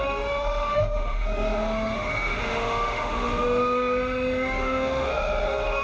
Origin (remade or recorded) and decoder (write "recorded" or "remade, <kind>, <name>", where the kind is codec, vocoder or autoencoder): remade, autoencoder, DAC-VAE